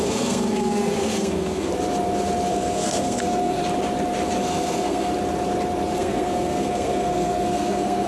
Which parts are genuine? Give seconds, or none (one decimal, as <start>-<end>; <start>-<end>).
1.7-2.5; 3.6-4.4; 5.1-6.0